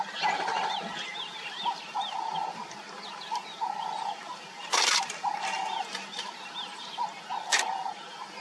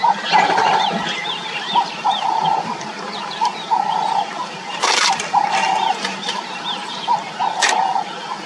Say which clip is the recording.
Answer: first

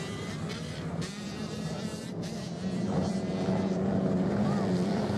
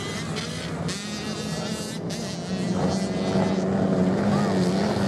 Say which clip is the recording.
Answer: second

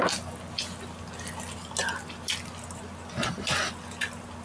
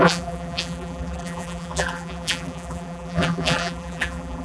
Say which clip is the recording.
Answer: first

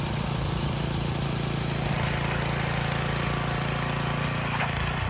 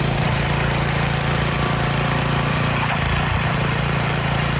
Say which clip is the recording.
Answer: first